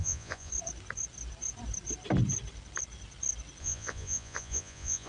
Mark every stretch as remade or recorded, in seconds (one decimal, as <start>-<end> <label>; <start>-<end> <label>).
0.0-0.5 remade; 0.5-3.6 recorded; 3.6-5.1 remade